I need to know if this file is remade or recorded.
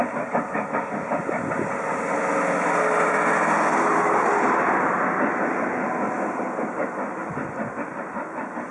recorded